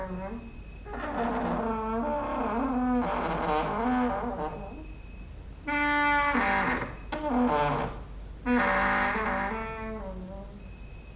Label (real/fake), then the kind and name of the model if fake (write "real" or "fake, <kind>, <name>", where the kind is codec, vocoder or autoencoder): real